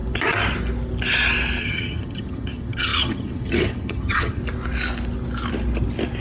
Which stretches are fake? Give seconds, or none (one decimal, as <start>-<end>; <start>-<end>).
1.6-4.4